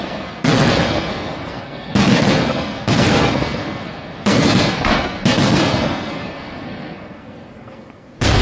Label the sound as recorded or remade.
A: remade